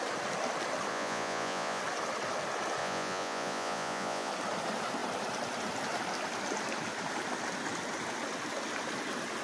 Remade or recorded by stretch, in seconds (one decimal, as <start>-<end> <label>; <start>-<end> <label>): 0.0-0.9 recorded; 0.9-1.8 remade; 1.8-2.8 recorded; 2.8-4.3 remade; 4.3-9.4 recorded